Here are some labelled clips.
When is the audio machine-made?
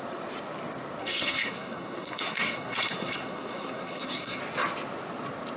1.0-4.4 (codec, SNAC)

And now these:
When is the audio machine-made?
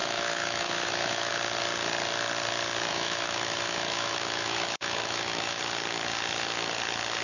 0.0-1.3 (autoencoder, DAC-VAE); 2.9-5.6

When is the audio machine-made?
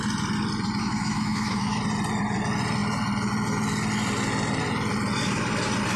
0.8-1.8 (autoencoder, DAC-VAE)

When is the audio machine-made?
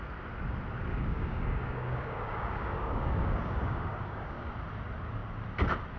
0.9-4.5 (codec, DAC)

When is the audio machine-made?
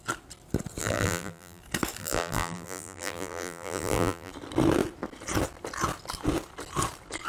0.8-1.6 (vocoder, BigVGAN v2); 2.0-4.3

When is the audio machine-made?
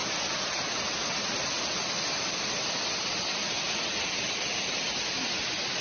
none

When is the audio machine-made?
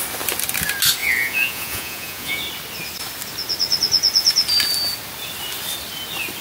1.0-2.4 (vocoder, Vocos)